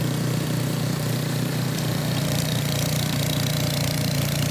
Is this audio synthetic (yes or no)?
yes